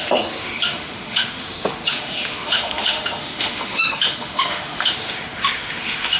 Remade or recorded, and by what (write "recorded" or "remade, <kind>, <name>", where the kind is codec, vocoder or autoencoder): remade, autoencoder, DAC-VAE